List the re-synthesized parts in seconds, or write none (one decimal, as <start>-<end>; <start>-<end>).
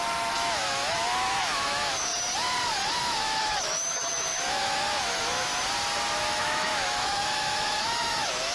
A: 0.0-2.1; 3.0-5.5; 6.2-8.5